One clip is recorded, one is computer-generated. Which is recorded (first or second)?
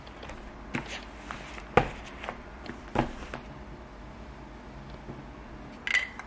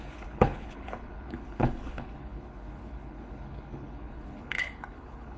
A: first